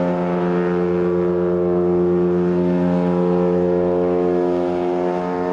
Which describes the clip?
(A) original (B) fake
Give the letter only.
A